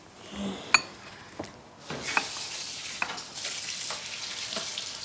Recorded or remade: recorded